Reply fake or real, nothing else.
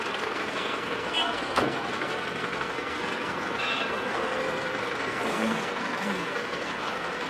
fake